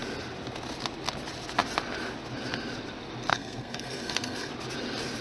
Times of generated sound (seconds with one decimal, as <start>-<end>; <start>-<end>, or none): 3.3-4.5